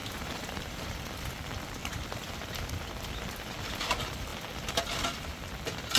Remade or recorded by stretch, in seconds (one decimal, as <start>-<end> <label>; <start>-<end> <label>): 0.0-1.0 remade; 1.0-1.8 recorded; 1.8-2.7 remade; 2.7-6.0 recorded